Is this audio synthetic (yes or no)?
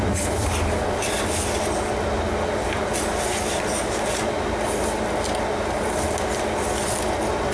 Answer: no